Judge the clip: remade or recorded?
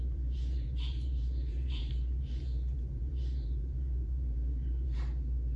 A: remade